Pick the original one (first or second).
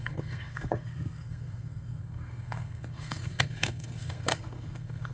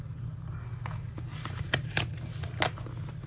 second